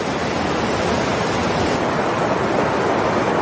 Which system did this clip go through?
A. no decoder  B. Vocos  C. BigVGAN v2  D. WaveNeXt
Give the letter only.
A